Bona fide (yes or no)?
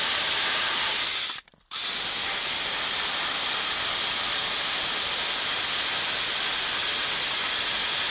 yes